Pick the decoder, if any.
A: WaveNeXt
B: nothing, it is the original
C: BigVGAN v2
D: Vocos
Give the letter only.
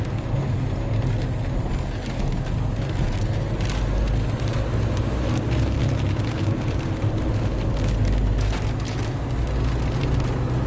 B